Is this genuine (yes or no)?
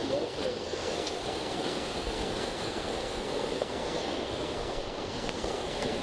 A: no